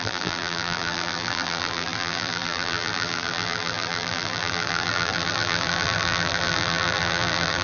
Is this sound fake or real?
fake